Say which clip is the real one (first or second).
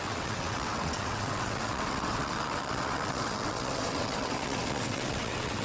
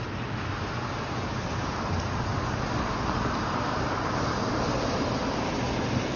second